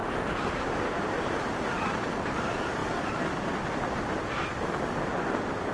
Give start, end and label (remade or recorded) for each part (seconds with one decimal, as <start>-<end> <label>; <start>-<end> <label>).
0.0-1.9 remade; 1.9-5.7 recorded